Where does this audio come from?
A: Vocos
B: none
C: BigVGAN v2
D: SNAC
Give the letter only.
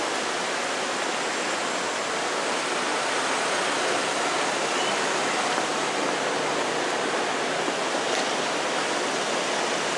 B